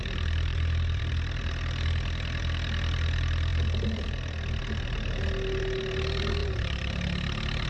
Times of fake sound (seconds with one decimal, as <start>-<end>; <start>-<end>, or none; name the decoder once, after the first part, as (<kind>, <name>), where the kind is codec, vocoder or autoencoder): 0.5-1.0 (vocoder, BigVGAN v2); 6.4-7.0